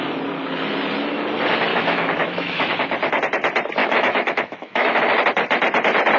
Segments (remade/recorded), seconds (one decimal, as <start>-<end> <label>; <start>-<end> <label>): 0.0-1.7 recorded; 1.7-2.7 remade; 2.7-3.8 recorded; 3.8-5.0 remade; 5.0-6.2 recorded